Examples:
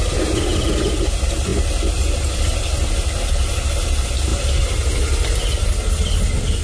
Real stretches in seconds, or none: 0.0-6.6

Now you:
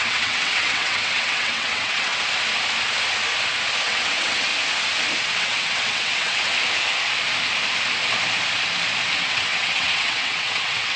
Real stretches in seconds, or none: 2.1-3.8; 4.5-5.2; 6.5-9.2

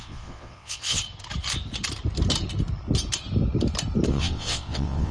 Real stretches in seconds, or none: 1.0-4.1

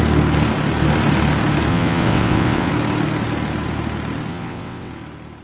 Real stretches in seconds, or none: 0.0-1.7; 2.7-4.3; 4.9-5.4

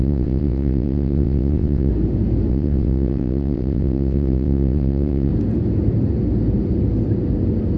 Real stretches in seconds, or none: 1.9-2.5; 5.3-7.8

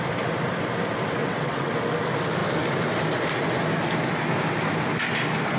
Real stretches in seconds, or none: 0.0-1.2; 1.7-5.6

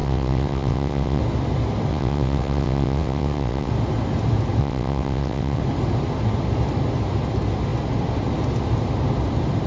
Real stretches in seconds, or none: 1.2-1.9; 3.7-4.6; 5.6-9.7

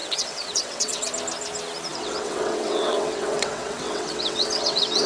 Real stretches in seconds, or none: 1.1-1.9